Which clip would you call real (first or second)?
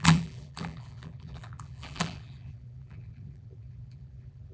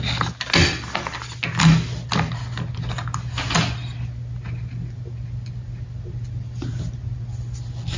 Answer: second